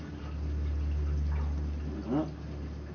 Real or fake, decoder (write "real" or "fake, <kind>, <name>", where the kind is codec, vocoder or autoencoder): real